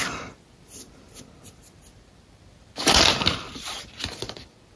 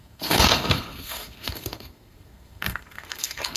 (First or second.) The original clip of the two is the first